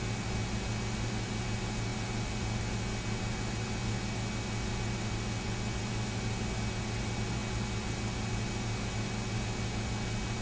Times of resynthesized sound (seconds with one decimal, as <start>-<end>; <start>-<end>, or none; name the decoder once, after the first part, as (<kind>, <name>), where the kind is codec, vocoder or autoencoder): none